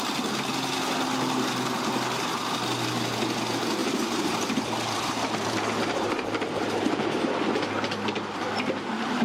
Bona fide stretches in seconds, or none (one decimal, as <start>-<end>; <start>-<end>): 0.0-3.8; 7.4-9.2